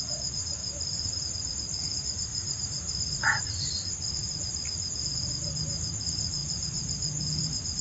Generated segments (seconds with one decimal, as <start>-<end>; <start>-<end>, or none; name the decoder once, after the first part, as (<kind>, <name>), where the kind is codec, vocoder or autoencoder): 0.6-1.2 (vocoder, BigVGAN v2); 2.3-4.2